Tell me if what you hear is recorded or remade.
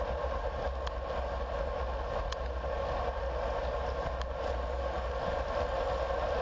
recorded